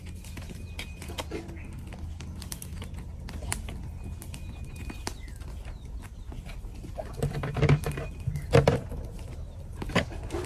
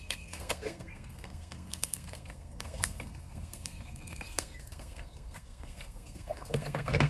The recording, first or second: first